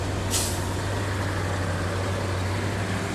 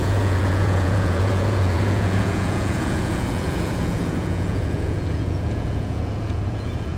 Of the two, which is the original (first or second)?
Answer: first